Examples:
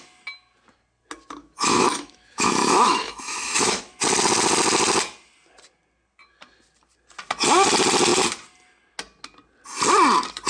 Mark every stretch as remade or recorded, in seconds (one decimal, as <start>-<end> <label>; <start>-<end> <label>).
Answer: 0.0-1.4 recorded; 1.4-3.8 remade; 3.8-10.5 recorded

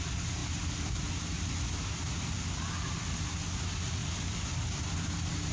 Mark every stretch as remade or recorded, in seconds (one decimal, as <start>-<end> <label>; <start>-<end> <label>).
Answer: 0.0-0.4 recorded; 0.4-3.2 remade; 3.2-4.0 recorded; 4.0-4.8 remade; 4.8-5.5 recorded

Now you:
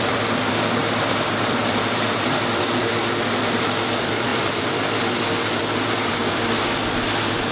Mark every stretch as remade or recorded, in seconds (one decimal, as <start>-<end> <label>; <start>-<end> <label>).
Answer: 0.0-3.0 remade; 3.0-3.6 recorded; 3.6-7.5 remade

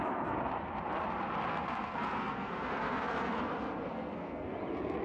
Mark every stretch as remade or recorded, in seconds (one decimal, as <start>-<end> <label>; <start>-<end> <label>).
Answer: 0.0-1.5 recorded; 1.5-3.5 remade; 3.5-3.9 recorded; 3.9-4.5 remade; 4.5-5.0 recorded

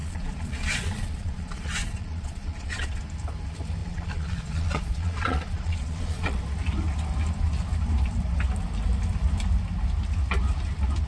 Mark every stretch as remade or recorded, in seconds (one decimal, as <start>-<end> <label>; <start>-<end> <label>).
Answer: 0.0-3.0 remade; 3.0-3.8 recorded; 3.8-6.4 remade; 6.4-11.1 recorded

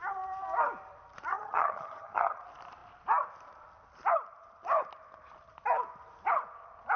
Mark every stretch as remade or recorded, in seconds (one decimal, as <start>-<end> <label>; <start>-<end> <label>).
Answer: 0.0-1.3 recorded; 1.3-2.4 remade; 2.4-7.0 recorded